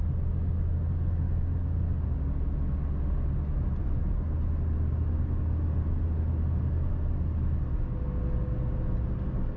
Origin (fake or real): real